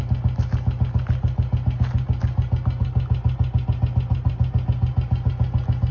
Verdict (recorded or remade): recorded